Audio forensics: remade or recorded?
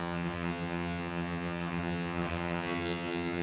remade